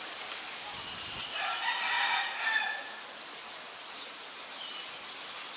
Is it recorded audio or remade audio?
recorded